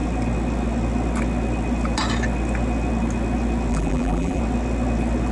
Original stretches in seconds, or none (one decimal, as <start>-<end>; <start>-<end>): 0.0-3.7; 4.4-5.3